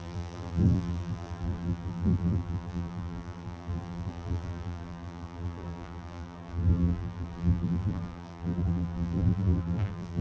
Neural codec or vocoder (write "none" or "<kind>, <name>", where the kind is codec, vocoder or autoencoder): vocoder, BigVGAN v2